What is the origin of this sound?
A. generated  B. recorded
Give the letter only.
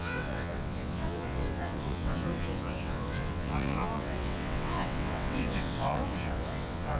A